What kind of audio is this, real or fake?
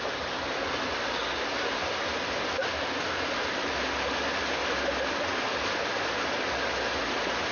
real